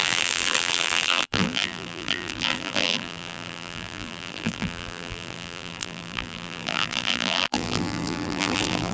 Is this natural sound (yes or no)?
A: no